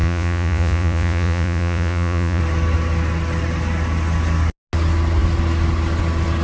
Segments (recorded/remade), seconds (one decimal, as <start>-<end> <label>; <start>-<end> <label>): 0.0-2.4 remade; 2.4-6.4 recorded